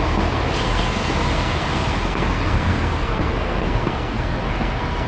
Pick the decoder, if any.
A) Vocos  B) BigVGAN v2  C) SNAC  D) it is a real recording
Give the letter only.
C